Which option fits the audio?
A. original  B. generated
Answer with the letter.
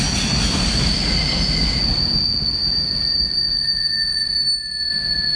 A